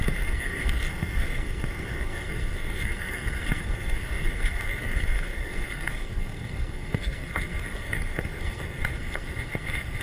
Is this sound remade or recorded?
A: remade